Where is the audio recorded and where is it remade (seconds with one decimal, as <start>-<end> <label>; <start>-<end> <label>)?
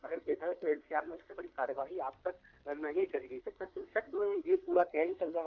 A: 0.0-1.8 remade; 1.8-3.4 recorded; 3.4-5.5 remade